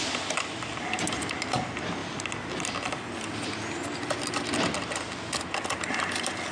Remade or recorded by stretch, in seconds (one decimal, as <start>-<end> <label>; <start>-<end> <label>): 0.0-6.5 recorded